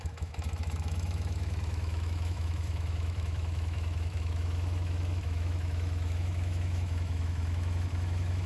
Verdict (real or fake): fake